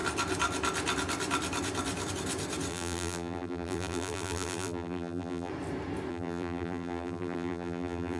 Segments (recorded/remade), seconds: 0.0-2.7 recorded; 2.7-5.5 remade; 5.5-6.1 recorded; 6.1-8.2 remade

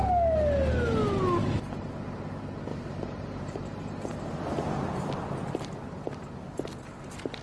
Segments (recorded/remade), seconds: 0.0-1.4 recorded; 1.4-1.9 remade; 1.9-2.7 recorded; 2.7-5.1 remade; 5.1-7.4 recorded